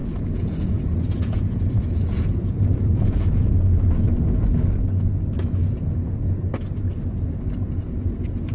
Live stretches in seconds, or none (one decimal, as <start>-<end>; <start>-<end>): 3.7-8.5